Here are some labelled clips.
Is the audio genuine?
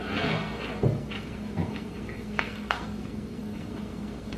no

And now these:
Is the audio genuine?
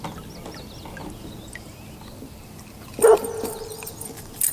yes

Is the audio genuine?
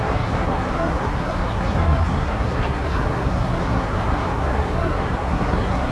no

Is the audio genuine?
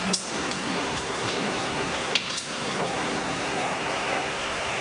no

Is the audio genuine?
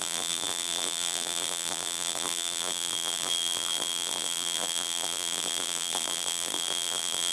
no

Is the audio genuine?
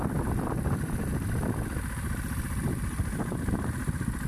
yes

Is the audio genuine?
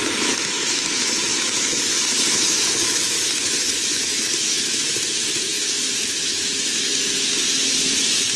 no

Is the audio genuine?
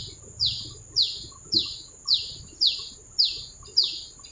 yes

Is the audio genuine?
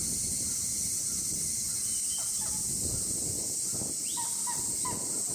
yes